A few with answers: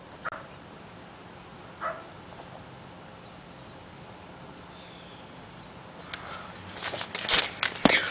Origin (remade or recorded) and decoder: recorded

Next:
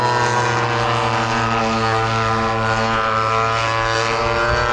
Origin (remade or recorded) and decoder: recorded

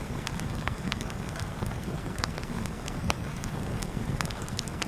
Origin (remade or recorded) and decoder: remade, codec, SNAC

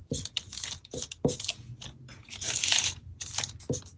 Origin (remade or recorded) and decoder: recorded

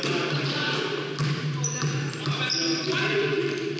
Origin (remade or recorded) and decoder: recorded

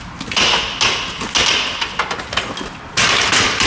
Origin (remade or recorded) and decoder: recorded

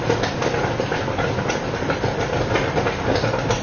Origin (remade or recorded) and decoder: recorded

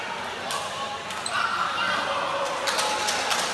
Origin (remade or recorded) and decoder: recorded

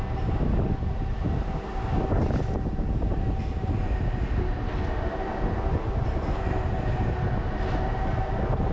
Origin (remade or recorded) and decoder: recorded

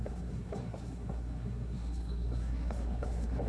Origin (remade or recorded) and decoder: remade, codec, SNAC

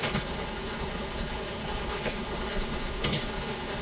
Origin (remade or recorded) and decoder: remade, codec, HILCodec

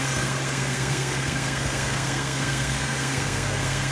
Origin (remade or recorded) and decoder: remade, codec, SNAC